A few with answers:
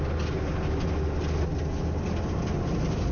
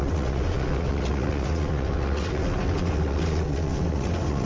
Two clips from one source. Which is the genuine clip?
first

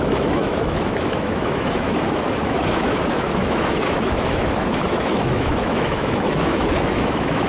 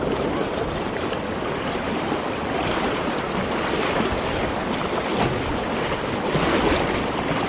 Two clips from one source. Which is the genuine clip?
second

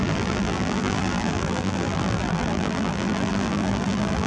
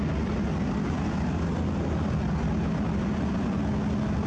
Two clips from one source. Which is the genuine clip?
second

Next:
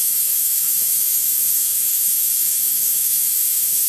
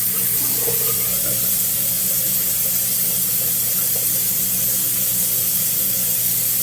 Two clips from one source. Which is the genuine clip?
second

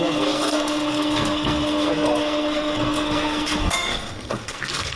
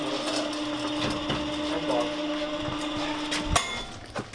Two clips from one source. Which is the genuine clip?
second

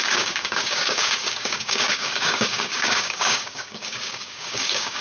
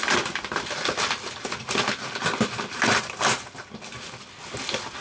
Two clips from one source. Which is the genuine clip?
second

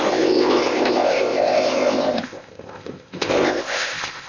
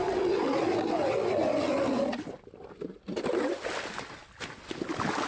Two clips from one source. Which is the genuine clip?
second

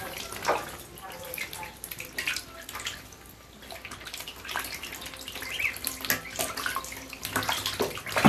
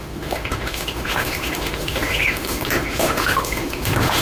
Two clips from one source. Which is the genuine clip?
first